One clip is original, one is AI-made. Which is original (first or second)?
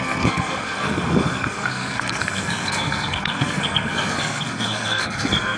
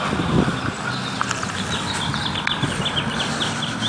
second